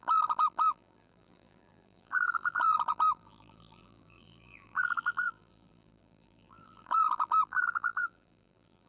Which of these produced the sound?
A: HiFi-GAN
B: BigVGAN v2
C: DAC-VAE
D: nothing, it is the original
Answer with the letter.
B